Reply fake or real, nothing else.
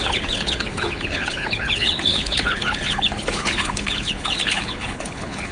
fake